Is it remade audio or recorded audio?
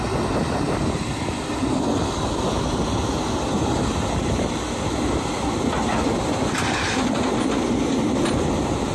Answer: recorded